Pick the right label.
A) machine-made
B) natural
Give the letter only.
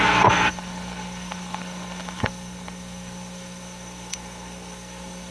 A